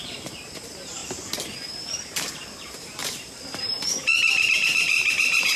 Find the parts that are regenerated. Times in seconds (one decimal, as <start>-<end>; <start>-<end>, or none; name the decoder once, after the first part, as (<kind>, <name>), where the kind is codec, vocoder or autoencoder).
0.0-1.0 (vocoder, BigVGAN v2); 1.8-5.6